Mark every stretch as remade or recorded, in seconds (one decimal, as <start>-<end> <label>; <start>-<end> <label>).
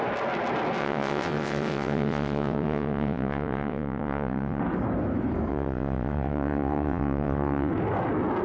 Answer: 0.0-0.8 recorded; 0.8-4.6 remade; 4.6-5.5 recorded; 5.5-7.7 remade; 7.7-8.4 recorded